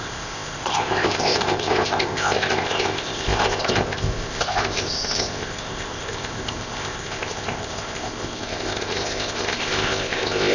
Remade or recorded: remade